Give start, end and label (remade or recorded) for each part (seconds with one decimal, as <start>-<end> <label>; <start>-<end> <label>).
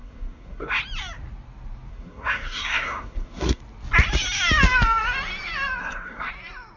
0.0-0.8 remade; 0.8-1.9 recorded; 1.9-3.6 remade; 3.6-5.8 recorded; 5.8-6.3 remade; 6.3-6.8 recorded